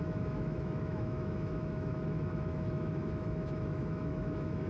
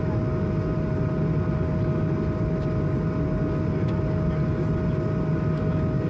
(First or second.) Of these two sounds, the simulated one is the first